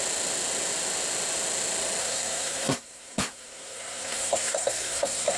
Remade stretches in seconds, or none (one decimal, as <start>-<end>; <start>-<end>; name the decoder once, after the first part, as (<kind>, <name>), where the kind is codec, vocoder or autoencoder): 2.0-5.4 (codec, SNAC)